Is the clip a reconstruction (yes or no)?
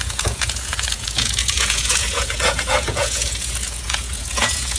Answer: yes